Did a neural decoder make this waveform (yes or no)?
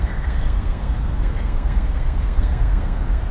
yes